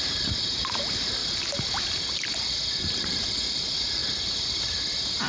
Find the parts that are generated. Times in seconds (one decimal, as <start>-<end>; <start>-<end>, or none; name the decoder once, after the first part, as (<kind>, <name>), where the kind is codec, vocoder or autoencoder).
0.0-1.2 (vocoder, BigVGAN v2); 2.8-4.0